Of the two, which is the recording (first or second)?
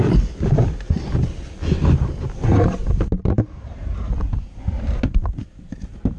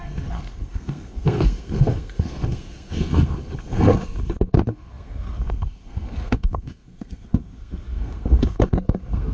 first